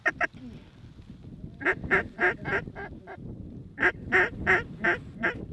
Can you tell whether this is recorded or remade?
recorded